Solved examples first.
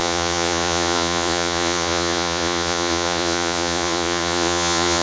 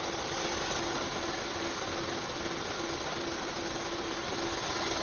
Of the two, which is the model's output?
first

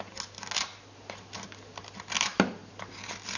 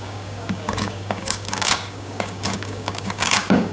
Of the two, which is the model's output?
second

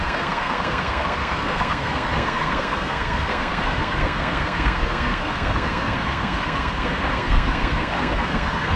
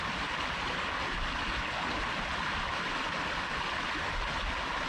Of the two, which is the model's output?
first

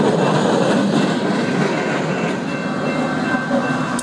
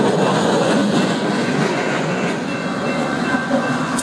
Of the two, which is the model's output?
second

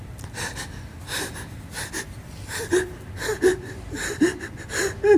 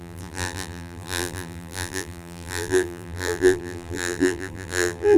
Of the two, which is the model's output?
second